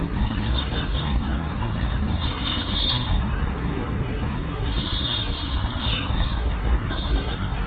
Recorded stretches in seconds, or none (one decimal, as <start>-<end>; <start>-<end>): none